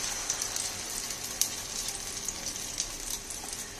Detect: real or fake real